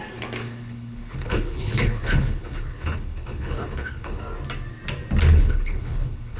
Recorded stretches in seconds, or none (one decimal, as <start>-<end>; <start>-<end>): 0.0-0.4; 4.2-5.3